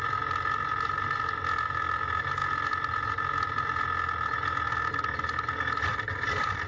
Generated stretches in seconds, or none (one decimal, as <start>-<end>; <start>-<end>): 0.0-2.4; 4.9-6.7